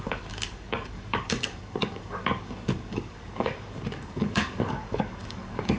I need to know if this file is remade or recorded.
remade